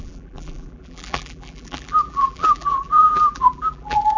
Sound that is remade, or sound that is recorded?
remade